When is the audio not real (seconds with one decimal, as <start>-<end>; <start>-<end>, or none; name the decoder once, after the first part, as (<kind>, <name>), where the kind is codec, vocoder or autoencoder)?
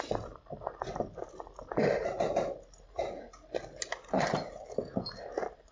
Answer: none